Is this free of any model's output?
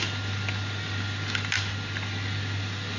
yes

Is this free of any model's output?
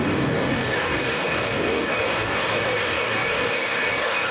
no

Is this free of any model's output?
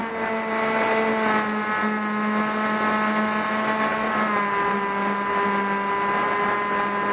yes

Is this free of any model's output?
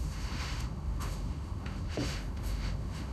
no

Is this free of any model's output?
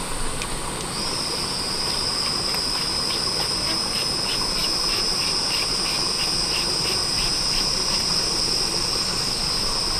yes